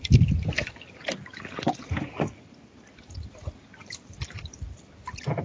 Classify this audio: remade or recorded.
recorded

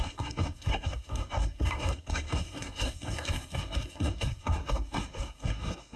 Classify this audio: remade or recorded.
remade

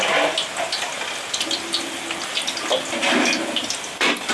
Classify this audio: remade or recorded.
recorded